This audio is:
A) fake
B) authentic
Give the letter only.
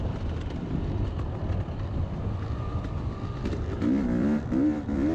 B